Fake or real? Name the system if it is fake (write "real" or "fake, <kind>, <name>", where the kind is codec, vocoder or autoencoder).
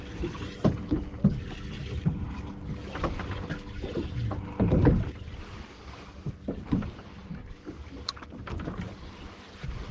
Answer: real